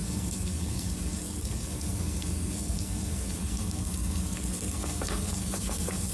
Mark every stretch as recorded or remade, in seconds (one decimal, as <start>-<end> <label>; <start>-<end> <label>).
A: 0.0-6.1 remade